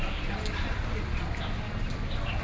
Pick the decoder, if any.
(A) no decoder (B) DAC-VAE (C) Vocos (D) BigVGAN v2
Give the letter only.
A